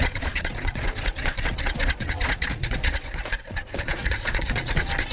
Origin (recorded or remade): remade